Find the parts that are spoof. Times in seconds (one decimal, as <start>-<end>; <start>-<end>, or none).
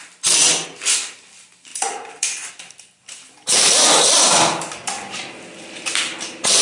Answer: 5.5-6.0